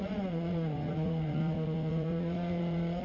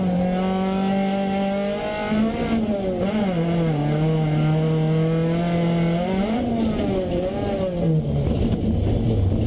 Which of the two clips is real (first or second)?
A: second